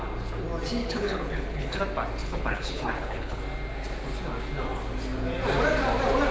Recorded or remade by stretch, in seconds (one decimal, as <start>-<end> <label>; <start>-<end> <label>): 0.0-0.8 recorded; 0.8-1.8 remade; 1.8-2.2 recorded; 2.2-3.4 remade; 3.4-6.3 recorded